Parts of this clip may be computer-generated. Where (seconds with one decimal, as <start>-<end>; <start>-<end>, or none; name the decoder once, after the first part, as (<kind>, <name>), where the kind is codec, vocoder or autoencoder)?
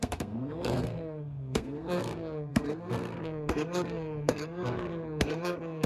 0.0-5.9 (codec, SNAC)